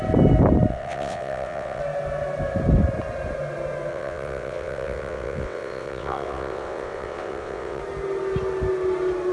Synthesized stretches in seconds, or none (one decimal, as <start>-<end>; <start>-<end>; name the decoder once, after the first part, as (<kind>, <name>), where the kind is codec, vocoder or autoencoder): 0.7-1.8 (vocoder, WaveNeXt); 3.9-7.8